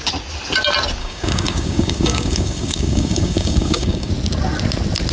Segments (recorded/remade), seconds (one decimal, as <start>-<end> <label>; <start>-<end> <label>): 0.0-1.0 recorded; 1.0-4.1 remade; 4.1-5.1 recorded